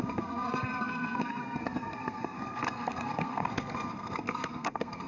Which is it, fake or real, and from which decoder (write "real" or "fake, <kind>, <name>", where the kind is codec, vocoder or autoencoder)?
fake, codec, SNAC